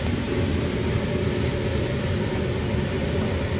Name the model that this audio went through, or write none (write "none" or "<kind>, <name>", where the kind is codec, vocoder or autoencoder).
none